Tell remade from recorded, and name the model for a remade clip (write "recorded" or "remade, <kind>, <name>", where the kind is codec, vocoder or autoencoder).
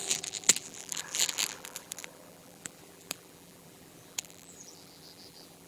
remade, vocoder, BigVGAN v2